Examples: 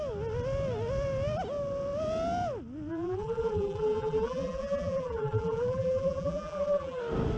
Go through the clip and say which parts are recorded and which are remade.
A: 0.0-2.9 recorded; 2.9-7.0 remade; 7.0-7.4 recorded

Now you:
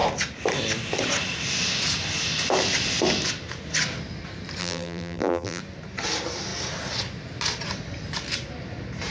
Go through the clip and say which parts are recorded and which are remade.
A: 0.0-4.6 recorded; 4.6-5.6 remade; 5.6-9.1 recorded

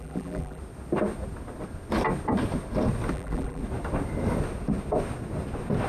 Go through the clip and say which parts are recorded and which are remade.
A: 0.0-0.6 remade; 0.6-3.1 recorded; 3.1-3.6 remade; 3.6-5.9 recorded